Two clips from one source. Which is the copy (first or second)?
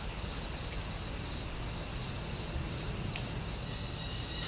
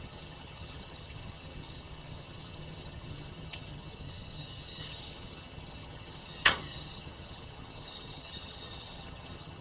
second